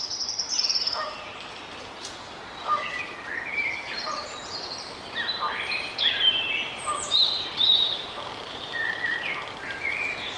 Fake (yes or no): yes